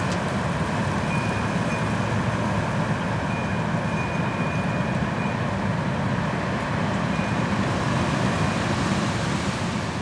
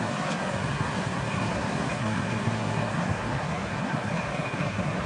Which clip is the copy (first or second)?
second